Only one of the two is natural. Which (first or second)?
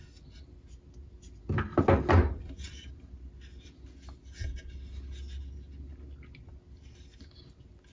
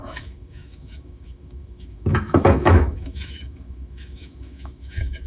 first